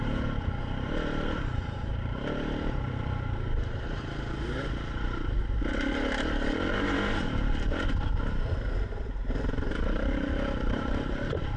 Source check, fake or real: fake